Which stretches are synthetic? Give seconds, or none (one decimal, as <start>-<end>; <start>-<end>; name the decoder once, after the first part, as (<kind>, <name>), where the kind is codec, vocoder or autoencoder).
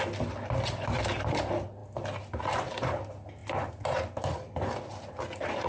none